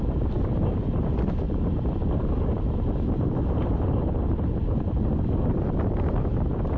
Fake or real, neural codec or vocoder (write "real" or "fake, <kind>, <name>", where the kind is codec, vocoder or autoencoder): real